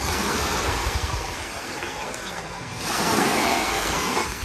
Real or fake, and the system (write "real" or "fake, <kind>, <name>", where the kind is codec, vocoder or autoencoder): fake, codec, SNAC